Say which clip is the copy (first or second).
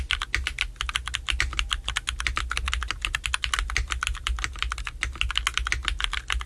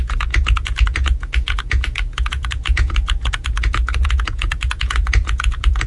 second